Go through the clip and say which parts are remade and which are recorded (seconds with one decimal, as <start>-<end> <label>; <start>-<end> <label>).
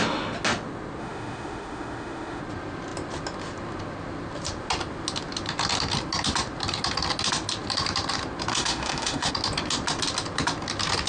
0.0-1.0 recorded; 1.0-2.4 remade; 2.4-8.5 recorded; 8.5-9.3 remade; 9.3-11.1 recorded